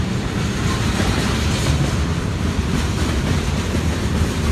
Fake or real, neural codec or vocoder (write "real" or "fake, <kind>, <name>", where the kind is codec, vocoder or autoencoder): fake, vocoder, BigVGAN v2